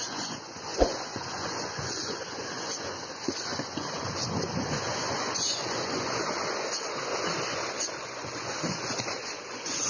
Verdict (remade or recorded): remade